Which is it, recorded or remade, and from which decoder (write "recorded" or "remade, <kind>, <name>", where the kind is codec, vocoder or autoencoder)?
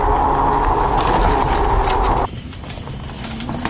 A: recorded